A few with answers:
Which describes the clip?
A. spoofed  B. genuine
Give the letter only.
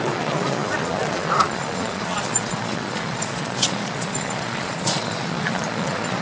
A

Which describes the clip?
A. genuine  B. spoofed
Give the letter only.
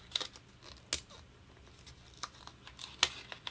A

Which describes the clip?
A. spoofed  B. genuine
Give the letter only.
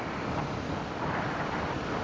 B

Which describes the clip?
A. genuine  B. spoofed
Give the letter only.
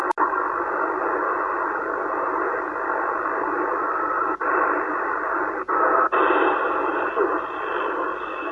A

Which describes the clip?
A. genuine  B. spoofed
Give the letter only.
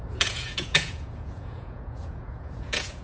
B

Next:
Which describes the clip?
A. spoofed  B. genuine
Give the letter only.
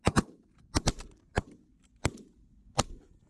B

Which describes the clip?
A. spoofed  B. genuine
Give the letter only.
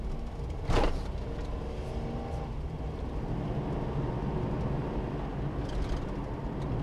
B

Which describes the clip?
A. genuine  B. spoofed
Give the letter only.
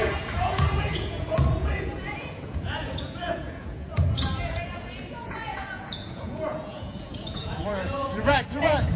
B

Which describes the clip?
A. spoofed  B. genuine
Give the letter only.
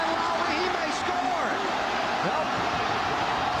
B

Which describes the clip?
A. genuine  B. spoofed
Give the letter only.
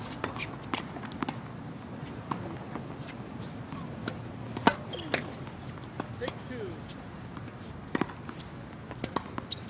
A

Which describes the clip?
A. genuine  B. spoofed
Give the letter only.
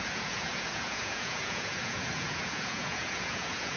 B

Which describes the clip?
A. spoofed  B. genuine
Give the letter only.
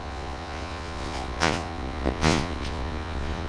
A